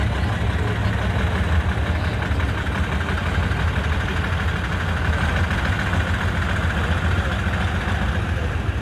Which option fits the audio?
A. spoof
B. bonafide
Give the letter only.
B